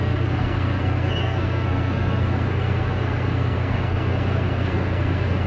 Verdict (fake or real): fake